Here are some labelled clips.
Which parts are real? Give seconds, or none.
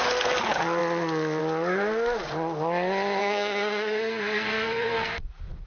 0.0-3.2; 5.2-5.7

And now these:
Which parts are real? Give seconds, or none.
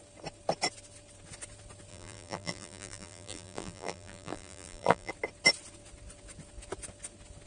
0.0-1.9; 5.1-7.5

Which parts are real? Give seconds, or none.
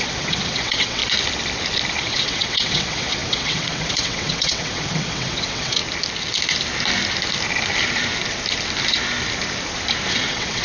1.0-2.0; 5.8-10.1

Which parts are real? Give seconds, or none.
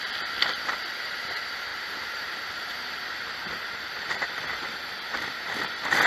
0.0-1.7; 4.6-6.1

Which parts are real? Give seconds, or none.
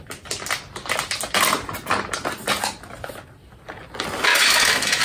0.0-4.3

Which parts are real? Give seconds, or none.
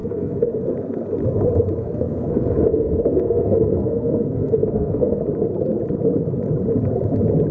0.5-1.8; 5.2-7.5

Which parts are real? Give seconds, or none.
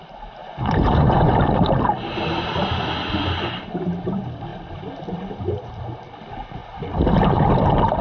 0.0-0.4; 1.3-8.0